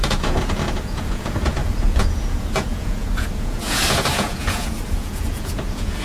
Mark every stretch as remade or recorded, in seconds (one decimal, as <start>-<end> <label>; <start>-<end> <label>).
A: 0.0-6.0 remade